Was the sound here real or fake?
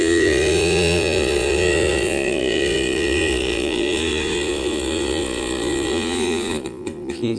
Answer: fake